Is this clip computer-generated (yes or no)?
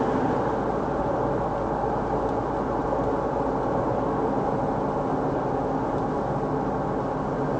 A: no